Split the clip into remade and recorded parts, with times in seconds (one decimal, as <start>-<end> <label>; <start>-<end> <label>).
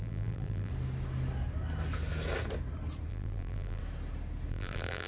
0.0-0.7 remade; 0.7-3.1 recorded; 3.1-3.8 remade; 3.8-4.5 recorded; 4.5-5.1 remade